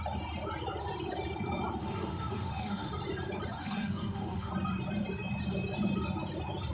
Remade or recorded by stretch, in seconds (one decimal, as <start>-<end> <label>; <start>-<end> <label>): 0.0-1.8 recorded; 1.8-2.9 remade; 2.9-3.6 recorded; 3.6-4.5 remade; 4.5-6.7 recorded